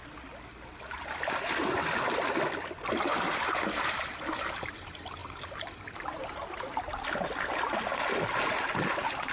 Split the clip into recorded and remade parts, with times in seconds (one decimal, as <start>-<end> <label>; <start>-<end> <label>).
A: 0.0-5.2 remade; 5.2-5.9 recorded; 5.9-7.9 remade; 7.9-8.7 recorded; 8.7-9.3 remade